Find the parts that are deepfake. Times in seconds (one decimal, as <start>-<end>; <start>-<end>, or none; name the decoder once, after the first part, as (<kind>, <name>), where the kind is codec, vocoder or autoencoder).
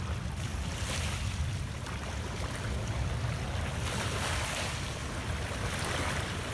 none